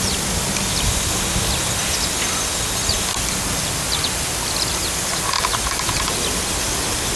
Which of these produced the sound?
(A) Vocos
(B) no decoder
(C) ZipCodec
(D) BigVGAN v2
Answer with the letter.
B